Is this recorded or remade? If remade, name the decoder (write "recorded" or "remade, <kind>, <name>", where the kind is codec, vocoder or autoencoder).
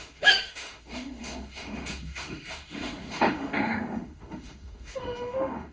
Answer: remade, autoencoder, DAC-VAE